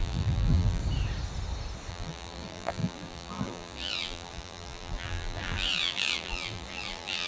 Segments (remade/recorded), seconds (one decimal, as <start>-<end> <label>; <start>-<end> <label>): 0.0-0.8 remade; 0.8-1.9 recorded; 1.9-7.3 remade